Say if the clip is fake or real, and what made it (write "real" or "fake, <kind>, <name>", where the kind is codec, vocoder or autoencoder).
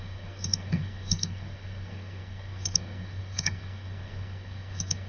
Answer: fake, codec, SNAC